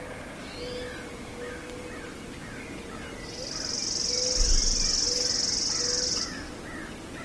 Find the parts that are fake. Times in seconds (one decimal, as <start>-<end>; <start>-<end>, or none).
none